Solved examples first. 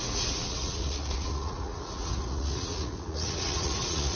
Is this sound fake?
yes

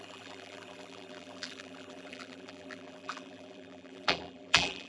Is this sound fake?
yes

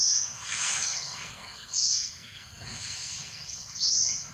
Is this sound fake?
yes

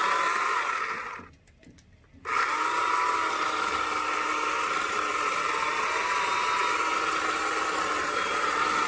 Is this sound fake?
no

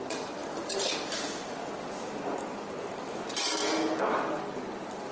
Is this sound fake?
no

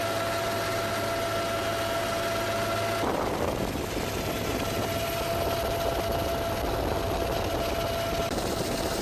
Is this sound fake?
no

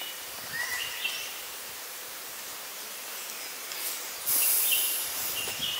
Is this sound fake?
yes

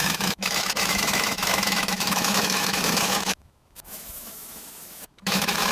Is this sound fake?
yes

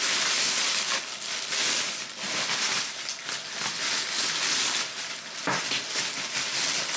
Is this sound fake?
no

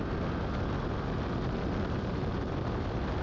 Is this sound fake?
no